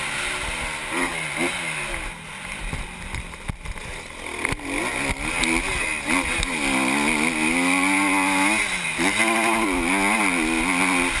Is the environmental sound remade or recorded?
recorded